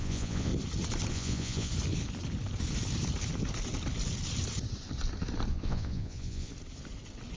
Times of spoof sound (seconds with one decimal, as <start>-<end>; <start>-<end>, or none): 0.0-0.5; 1.1-1.7; 5.5-6.5